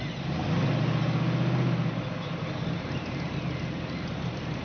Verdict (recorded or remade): recorded